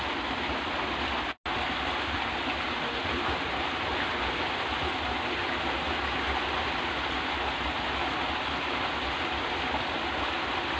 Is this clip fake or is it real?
real